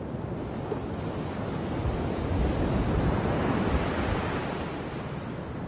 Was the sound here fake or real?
real